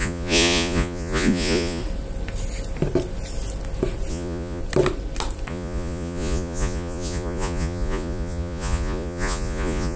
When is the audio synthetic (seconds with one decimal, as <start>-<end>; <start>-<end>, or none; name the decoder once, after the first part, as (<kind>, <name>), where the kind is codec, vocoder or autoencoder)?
0.0-1.8 (vocoder, Vocos); 4.1-4.6; 5.5-10.0